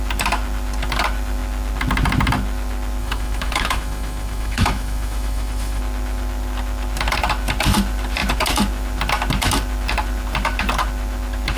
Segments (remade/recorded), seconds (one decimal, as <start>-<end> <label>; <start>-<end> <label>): 0.0-3.0 recorded; 3.0-5.8 remade; 5.8-11.6 recorded

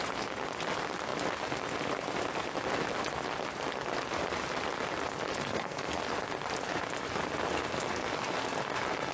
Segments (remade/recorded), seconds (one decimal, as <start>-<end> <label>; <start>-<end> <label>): 0.0-5.3 recorded; 5.3-6.0 remade; 6.0-9.1 recorded

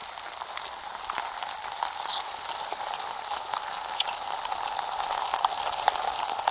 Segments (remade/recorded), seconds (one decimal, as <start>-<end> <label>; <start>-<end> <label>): 0.0-6.5 recorded

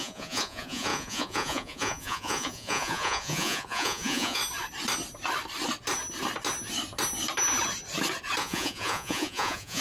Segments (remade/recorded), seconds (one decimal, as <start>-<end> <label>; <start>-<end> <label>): 0.0-4.4 remade; 4.4-8.4 recorded; 8.4-9.8 remade

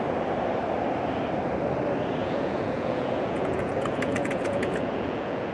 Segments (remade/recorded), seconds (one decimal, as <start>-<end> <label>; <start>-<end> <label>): 0.0-2.2 recorded; 2.2-5.5 remade

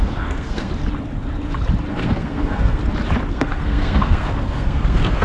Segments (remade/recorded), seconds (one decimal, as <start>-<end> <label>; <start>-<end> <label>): 0.0-0.7 remade; 0.7-1.9 recorded; 1.9-2.8 remade; 2.8-3.3 recorded; 3.3-5.2 remade

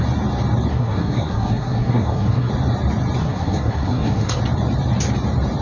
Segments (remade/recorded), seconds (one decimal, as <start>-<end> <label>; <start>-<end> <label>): 0.0-0.7 recorded; 0.7-2.5 remade; 2.5-3.2 recorded; 3.2-4.4 remade; 4.4-5.6 recorded

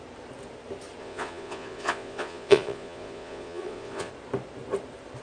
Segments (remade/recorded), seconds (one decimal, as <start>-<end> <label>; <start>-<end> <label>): 0.0-1.0 recorded; 1.0-4.1 remade; 4.1-5.2 recorded